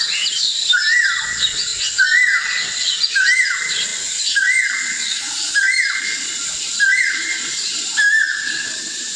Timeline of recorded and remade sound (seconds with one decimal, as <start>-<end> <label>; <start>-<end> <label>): 0.0-1.7 remade; 1.7-3.1 recorded; 3.1-3.9 remade; 3.9-7.0 recorded; 7.0-9.2 remade